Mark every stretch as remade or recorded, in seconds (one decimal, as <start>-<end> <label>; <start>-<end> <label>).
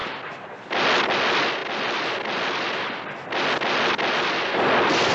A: 0.0-5.1 recorded